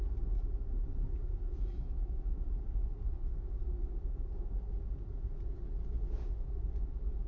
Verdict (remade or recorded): remade